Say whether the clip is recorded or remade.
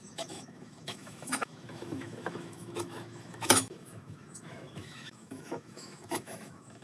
remade